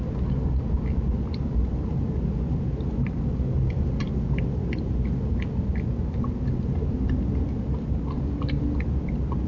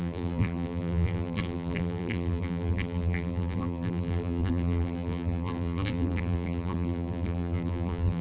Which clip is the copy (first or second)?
second